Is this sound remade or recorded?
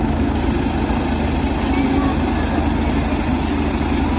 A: recorded